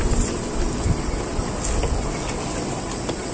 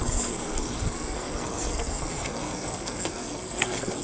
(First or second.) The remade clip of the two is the second